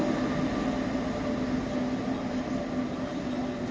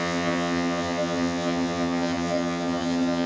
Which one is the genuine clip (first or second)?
first